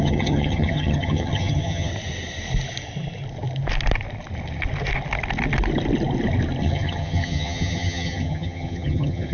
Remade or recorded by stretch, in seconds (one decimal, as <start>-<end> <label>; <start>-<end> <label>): 0.0-1.9 remade; 1.9-6.6 recorded; 6.6-9.3 remade